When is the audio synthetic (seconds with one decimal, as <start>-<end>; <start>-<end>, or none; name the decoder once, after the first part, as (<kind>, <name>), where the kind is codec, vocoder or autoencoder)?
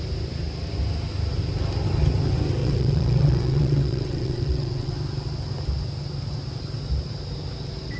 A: 2.6-4.9 (vocoder, WaveNeXt)